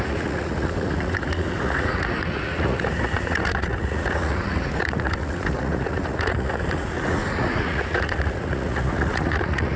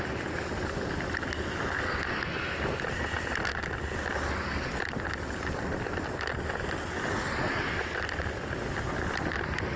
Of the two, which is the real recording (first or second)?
second